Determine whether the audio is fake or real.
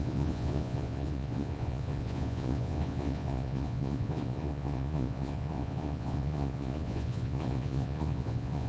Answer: fake